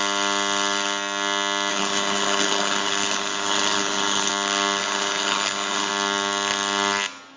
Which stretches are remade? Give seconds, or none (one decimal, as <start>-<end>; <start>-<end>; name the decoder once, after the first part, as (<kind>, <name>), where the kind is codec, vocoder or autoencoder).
1.7-4.3 (codec, HILCodec); 4.8-5.9